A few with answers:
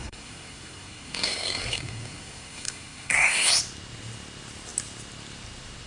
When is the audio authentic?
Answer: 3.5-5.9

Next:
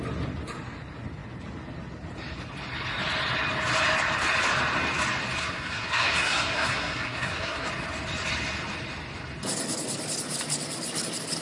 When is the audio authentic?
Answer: 0.0-5.4; 7.7-11.4

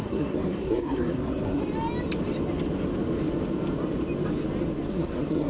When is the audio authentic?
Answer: 1.6-4.9